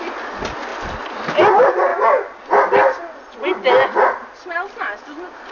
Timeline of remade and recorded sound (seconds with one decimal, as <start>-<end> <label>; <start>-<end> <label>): 0.0-5.5 recorded